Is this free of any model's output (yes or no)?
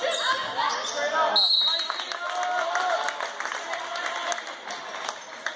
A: yes